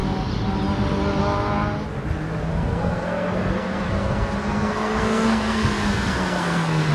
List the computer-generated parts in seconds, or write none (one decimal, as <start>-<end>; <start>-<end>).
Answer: 2.5-6.9